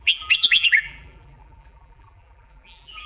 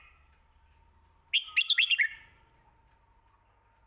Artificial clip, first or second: first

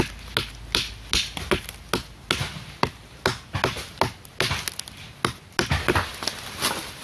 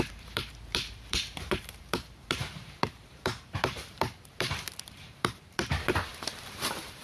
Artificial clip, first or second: second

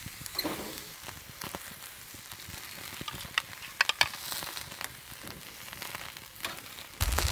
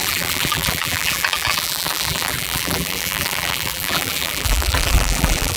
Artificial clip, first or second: second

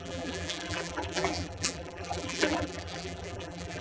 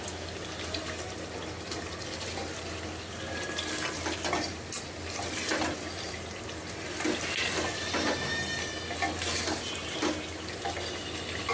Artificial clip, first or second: first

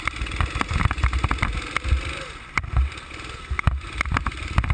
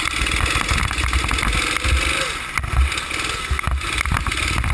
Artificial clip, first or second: first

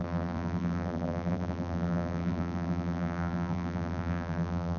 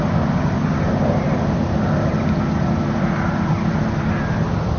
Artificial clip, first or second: first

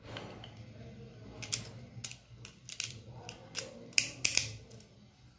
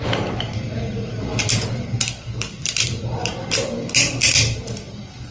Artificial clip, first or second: second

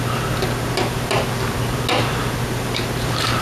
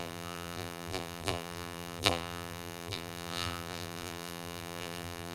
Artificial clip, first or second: second